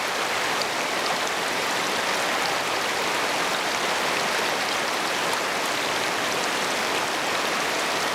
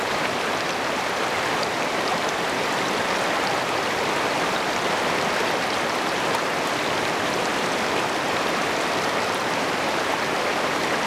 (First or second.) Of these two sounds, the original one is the first